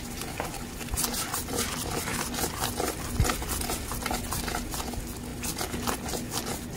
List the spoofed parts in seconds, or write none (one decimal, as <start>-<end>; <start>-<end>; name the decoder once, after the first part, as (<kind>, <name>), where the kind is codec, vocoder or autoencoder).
none